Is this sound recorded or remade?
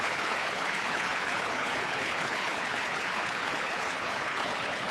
remade